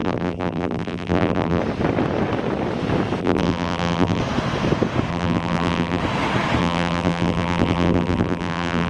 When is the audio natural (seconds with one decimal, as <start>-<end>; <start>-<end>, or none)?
1.6-3.2; 4.2-5.1; 6.0-6.6